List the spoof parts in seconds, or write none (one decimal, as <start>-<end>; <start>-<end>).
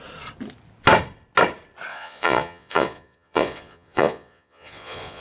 1.9-5.2